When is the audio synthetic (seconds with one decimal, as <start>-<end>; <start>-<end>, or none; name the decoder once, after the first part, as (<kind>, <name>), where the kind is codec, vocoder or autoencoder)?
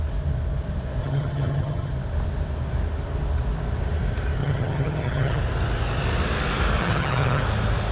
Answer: 1.0-1.9 (vocoder, HiFi-GAN); 4.4-5.4; 6.8-7.4